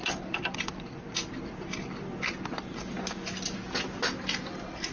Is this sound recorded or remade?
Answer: recorded